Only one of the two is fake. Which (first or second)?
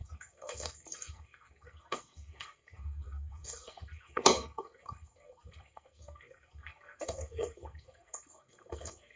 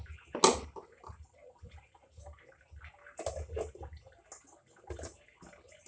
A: first